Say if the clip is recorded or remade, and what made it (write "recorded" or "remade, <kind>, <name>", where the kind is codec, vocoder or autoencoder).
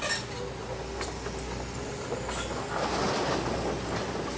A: recorded